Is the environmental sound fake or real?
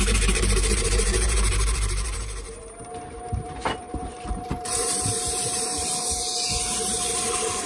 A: fake